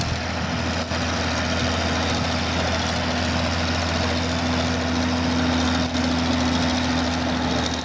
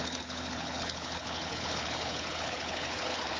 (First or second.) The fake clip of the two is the second